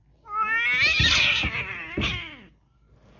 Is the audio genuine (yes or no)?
yes